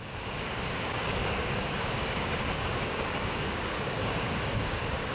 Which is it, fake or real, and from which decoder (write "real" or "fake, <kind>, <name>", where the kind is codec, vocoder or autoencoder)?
fake, codec, DAC